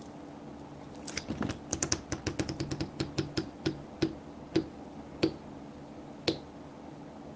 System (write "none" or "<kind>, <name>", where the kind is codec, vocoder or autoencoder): none